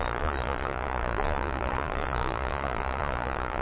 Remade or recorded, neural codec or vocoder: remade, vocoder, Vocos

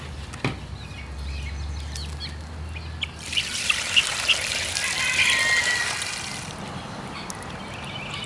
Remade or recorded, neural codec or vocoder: recorded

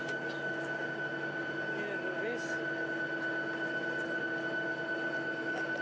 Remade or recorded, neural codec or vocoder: recorded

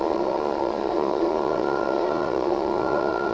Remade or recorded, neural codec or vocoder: remade, vocoder, Vocos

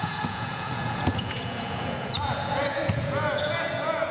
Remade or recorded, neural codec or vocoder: remade, vocoder, Vocos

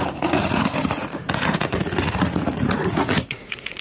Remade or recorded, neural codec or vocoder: remade, vocoder, Vocos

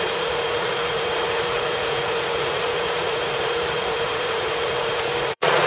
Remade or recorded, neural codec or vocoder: remade, vocoder, Vocos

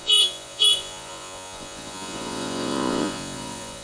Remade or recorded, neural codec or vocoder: remade, vocoder, Vocos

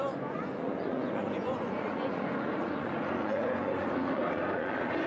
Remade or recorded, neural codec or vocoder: remade, vocoder, Vocos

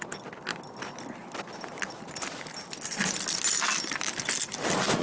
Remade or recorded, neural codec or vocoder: recorded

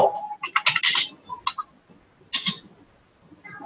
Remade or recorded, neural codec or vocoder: recorded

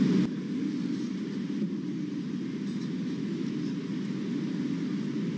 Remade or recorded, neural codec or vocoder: recorded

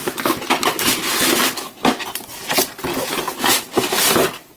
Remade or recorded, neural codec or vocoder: recorded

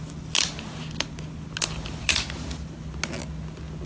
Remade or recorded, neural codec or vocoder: recorded